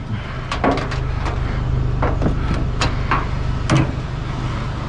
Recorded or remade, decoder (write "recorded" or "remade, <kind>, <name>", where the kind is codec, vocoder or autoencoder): recorded